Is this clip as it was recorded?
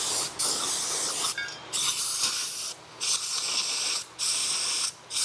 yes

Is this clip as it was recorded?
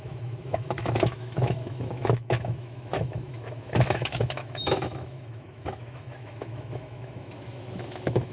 no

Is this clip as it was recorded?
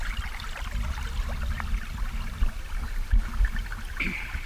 yes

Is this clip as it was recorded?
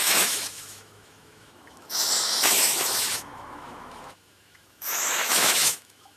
no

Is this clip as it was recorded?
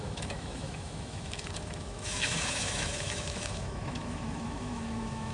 no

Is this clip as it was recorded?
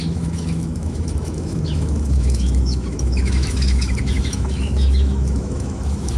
no